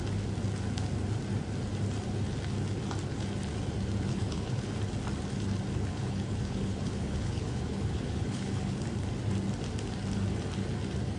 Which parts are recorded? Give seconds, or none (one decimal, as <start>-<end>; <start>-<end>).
0.0-4.1; 4.7-5.9; 8.8-11.2